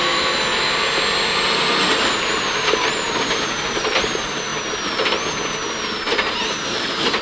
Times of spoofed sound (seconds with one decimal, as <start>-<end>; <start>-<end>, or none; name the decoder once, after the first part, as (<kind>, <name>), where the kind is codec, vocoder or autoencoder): 0.0-4.5 (vocoder, BigVGAN v2); 6.3-7.2

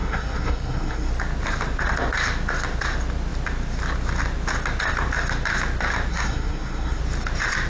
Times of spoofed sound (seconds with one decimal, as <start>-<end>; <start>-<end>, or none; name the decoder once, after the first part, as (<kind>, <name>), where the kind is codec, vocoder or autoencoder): 0.0-1.1 (codec, SNAC); 6.1-7.0

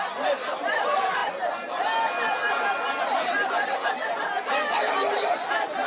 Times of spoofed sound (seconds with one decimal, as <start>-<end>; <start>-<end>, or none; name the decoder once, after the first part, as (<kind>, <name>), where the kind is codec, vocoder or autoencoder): none

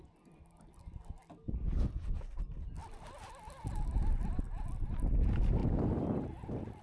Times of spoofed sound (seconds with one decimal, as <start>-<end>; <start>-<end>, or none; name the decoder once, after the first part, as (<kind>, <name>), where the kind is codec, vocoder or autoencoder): none